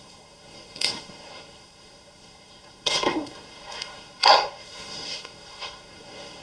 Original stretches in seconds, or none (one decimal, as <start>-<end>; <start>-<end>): none